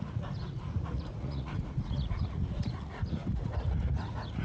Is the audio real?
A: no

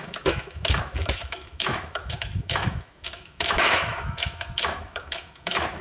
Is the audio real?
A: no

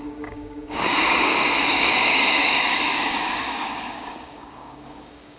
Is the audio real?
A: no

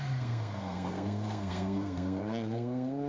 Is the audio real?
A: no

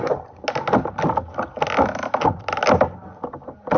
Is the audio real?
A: yes